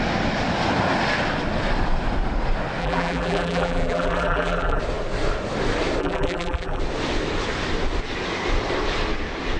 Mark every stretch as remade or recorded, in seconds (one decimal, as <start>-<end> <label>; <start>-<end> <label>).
0.0-2.8 recorded; 2.8-4.8 remade; 4.8-6.0 recorded; 6.0-6.8 remade; 6.8-9.6 recorded